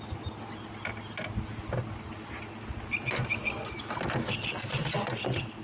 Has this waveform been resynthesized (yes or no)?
no